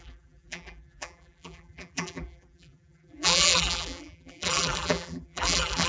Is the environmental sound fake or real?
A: fake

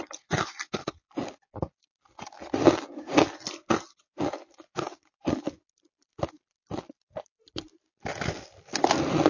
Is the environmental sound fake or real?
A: real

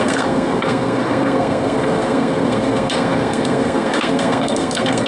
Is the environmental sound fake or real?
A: fake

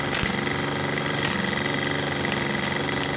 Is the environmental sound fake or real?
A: real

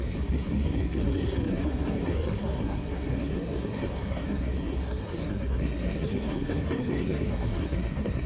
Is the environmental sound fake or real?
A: fake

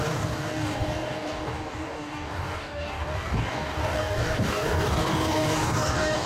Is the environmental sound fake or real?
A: fake